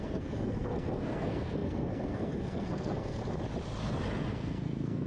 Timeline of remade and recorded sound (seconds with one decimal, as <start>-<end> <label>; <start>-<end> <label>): 0.0-3.2 remade; 3.2-4.3 recorded; 4.3-5.1 remade